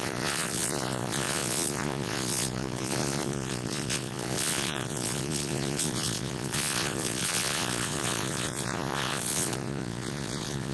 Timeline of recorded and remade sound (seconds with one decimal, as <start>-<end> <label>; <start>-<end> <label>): 0.0-10.7 remade